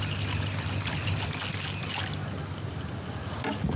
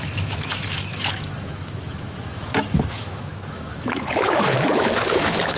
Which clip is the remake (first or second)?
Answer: second